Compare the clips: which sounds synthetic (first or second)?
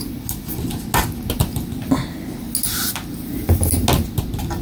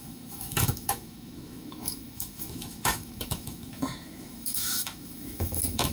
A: second